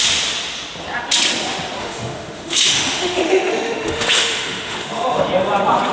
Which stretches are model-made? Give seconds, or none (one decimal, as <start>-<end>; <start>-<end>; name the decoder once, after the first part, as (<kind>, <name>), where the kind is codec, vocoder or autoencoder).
1.8-5.3 (autoencoder, DAC-VAE)